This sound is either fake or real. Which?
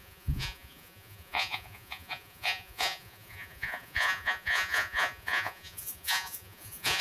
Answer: fake